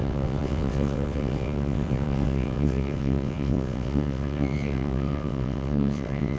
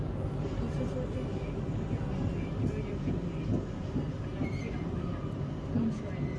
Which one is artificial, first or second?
first